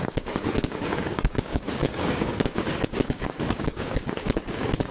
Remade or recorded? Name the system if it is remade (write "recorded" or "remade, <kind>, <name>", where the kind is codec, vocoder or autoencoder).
remade, codec, DAC